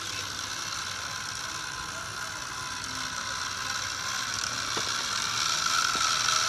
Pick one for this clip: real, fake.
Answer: real